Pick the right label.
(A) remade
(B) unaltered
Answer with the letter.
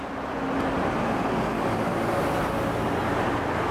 B